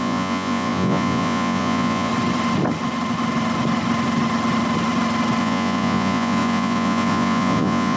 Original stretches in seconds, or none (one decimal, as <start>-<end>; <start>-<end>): 2.1-5.4